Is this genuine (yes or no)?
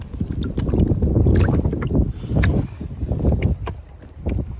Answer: yes